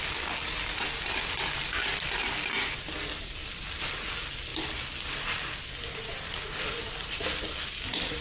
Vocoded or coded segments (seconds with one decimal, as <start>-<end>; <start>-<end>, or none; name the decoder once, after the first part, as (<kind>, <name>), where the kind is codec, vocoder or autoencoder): none